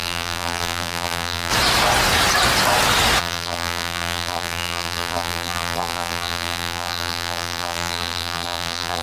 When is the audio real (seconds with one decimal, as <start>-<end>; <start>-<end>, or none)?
1.5-3.2